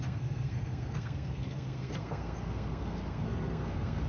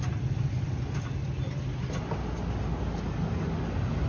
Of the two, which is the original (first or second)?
second